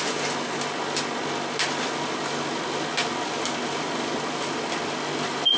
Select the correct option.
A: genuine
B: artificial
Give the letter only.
A